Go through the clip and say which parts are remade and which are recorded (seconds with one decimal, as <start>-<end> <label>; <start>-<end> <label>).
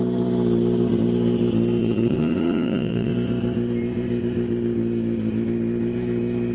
0.0-1.8 recorded; 1.8-3.1 remade; 3.1-6.5 recorded